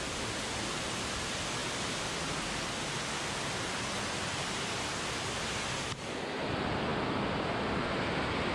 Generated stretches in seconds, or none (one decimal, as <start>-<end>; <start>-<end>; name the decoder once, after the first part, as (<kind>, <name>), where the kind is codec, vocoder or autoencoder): none